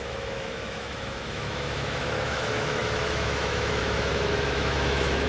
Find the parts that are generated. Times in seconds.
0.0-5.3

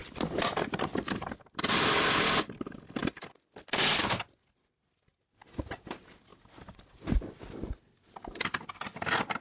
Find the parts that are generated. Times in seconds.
none

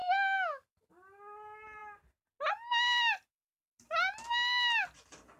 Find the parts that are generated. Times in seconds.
none

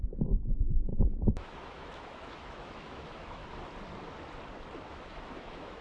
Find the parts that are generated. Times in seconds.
0.0-3.4; 4.9-5.8